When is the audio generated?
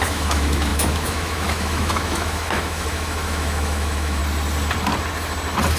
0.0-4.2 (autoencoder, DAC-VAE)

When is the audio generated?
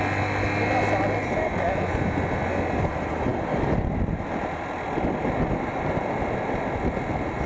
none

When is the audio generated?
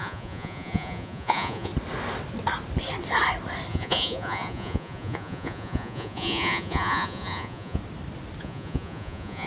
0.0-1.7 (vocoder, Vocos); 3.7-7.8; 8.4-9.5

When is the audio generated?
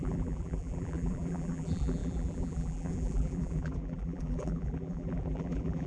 0.0-5.9 (vocoder, BigVGAN v2)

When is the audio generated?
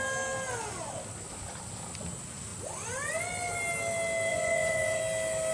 4.3-5.0 (vocoder, Vocos)